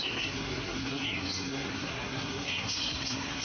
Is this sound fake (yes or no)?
yes